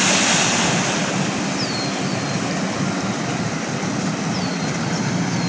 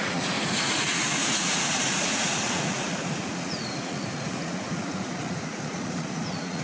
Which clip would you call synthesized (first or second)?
second